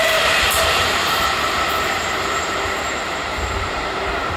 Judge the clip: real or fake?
fake